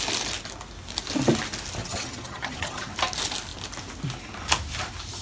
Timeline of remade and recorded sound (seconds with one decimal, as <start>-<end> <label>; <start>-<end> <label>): 0.0-1.8 recorded; 1.8-2.9 remade; 2.9-5.2 recorded